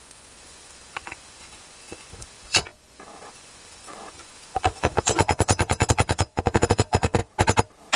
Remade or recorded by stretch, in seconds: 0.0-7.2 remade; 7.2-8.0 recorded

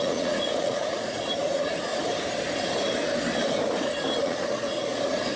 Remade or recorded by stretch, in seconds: 0.0-1.9 remade; 1.9-4.2 recorded; 4.2-5.4 remade

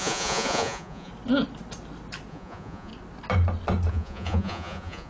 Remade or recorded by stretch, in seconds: 0.0-1.1 remade; 1.1-2.3 recorded; 2.3-2.9 remade; 2.9-3.9 recorded; 3.9-5.1 remade

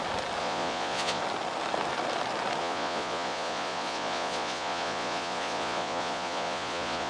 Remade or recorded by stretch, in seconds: 0.0-0.4 recorded; 0.4-1.2 remade; 1.2-2.6 recorded; 2.6-7.1 remade

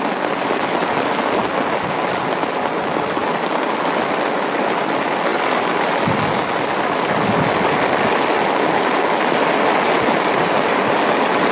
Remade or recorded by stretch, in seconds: 0.0-11.5 recorded

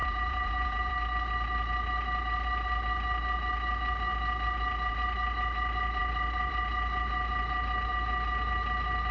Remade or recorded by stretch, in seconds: 0.0-0.9 remade; 0.9-9.1 recorded